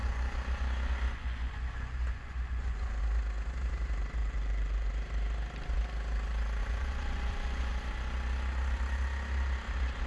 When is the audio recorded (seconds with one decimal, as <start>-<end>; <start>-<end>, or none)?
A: 3.0-4.2; 4.9-6.6; 7.7-10.1